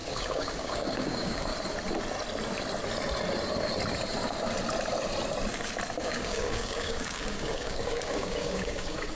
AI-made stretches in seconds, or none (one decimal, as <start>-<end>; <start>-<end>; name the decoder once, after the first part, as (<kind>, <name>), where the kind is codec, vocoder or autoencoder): 0.0-1.5 (codec, DAC); 6.0-9.1